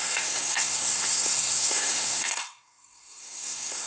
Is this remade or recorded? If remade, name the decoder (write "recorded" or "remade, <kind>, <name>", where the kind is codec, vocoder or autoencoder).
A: remade, codec, SNAC